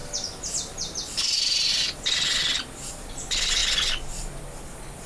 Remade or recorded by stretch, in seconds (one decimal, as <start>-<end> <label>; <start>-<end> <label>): 0.0-5.1 recorded